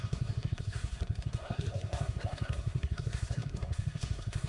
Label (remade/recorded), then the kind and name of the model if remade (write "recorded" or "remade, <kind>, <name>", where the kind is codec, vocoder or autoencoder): remade, codec, SNAC